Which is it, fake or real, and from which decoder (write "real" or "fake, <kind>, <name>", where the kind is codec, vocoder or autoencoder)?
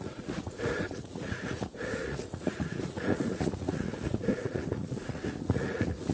fake, vocoder, Vocos